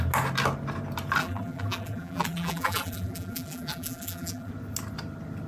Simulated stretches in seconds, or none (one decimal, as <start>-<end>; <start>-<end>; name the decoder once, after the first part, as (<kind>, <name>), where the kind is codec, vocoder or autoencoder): 1.2-4.5 (vocoder, BigVGAN v2)